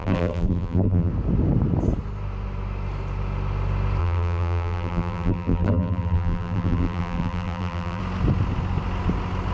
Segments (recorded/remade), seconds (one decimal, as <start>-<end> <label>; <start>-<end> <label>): 0.0-1.1 remade; 1.1-4.0 recorded; 4.0-8.0 remade; 8.0-9.5 recorded